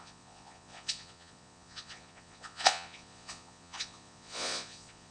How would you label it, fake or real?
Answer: fake